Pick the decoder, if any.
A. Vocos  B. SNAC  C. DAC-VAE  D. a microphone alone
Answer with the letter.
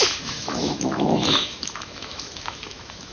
C